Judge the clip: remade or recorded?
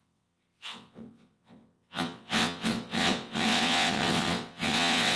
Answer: remade